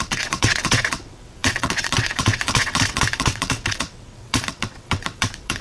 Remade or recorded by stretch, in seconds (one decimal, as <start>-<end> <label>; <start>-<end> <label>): 0.0-5.6 remade